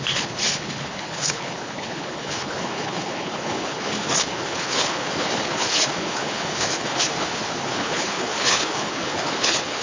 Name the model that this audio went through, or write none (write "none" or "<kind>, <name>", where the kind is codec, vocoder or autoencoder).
codec, HILCodec